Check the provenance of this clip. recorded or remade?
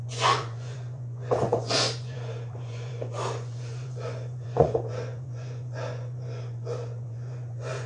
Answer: remade